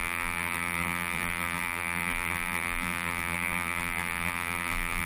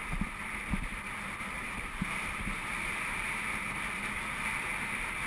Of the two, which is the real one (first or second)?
second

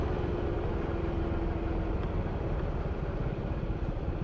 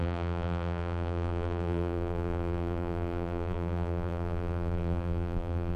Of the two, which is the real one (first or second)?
first